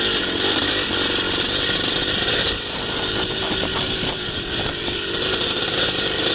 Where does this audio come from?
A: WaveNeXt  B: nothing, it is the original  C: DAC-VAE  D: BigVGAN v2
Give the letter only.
D